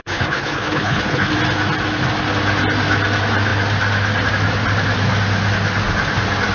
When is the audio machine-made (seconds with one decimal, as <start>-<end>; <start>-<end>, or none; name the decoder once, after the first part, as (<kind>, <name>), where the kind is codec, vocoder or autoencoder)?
0.0-1.3 (codec, HILCodec)